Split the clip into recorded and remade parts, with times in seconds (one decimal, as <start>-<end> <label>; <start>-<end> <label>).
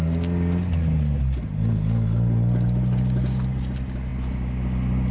0.0-5.1 recorded